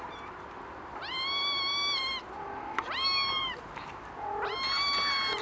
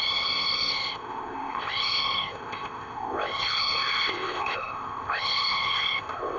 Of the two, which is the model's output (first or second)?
second